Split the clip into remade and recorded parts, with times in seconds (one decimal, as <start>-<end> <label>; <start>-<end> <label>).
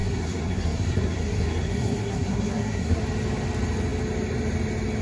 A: 0.0-3.0 remade; 3.0-5.0 recorded